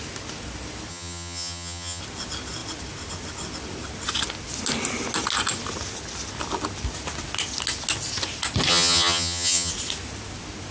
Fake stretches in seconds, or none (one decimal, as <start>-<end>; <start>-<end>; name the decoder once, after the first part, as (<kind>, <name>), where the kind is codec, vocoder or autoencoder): 0.9-2.0 (vocoder, HiFi-GAN); 8.7-9.7